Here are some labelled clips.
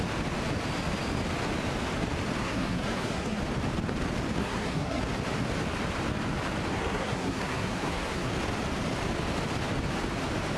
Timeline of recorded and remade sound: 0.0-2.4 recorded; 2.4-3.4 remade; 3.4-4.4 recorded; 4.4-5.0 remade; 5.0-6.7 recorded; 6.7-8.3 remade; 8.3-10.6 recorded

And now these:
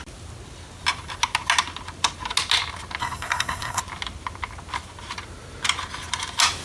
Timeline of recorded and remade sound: 0.0-3.0 recorded; 3.0-3.8 remade; 3.8-6.6 recorded

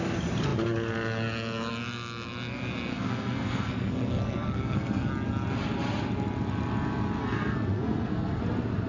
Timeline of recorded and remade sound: 0.0-2.9 recorded; 2.9-5.1 remade; 5.1-7.2 recorded; 7.2-8.4 remade; 8.4-8.9 recorded

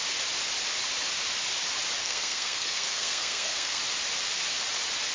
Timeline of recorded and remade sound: 0.0-2.0 recorded; 2.0-3.8 remade; 3.8-5.1 recorded